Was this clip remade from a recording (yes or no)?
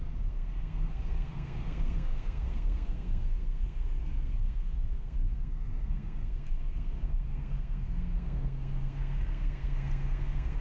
yes